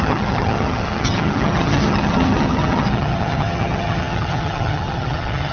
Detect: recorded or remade remade